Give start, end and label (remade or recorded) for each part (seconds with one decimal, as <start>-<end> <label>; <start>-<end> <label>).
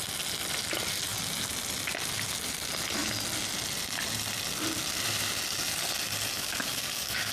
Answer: 0.0-6.4 recorded; 6.4-7.3 remade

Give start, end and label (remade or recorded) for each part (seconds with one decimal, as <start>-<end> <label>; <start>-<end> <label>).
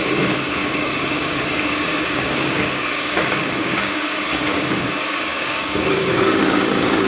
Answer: 0.0-7.1 remade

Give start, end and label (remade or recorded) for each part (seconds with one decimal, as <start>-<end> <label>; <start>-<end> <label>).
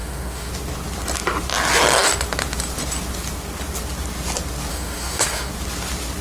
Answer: 0.0-0.5 remade; 0.5-4.7 recorded; 4.7-5.5 remade; 5.5-6.2 recorded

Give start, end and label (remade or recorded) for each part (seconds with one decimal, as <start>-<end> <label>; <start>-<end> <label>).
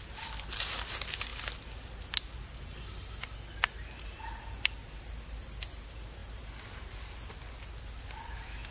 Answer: 0.0-8.7 recorded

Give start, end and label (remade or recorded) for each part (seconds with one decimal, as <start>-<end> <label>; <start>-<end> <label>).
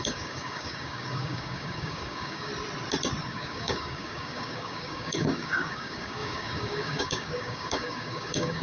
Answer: 0.0-2.5 remade; 2.5-3.2 recorded; 3.2-8.6 remade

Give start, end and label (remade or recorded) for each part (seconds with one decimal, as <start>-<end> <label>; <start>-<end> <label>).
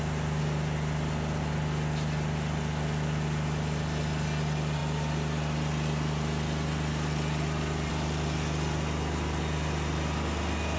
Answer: 0.0-10.8 recorded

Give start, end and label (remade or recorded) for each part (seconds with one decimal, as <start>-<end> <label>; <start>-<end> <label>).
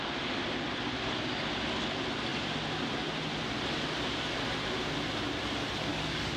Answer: 0.0-5.9 recorded; 5.9-6.4 remade